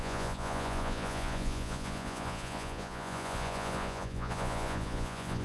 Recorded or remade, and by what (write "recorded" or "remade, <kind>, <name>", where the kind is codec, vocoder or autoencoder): remade, vocoder, Vocos